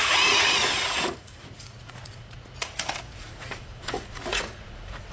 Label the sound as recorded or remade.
remade